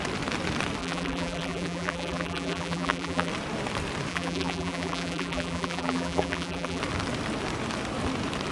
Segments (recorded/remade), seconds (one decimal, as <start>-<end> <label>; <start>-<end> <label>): 0.0-0.8 recorded; 0.8-3.3 remade; 3.3-4.1 recorded; 4.1-6.8 remade; 6.8-8.5 recorded